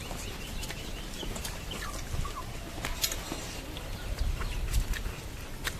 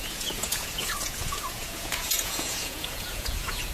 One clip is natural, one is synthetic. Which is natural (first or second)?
first